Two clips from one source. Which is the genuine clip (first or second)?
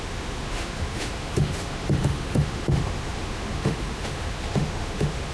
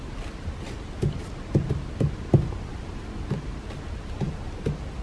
second